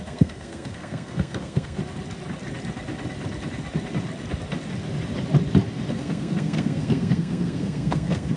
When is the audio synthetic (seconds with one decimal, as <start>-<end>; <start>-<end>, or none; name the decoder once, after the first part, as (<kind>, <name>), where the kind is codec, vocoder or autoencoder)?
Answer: 0.0-1.8 (codec, SNAC); 5.9-8.4